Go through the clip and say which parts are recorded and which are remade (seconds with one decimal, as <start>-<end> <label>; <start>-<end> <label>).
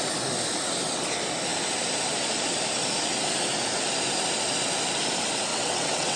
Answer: 0.0-5.5 recorded; 5.5-6.2 remade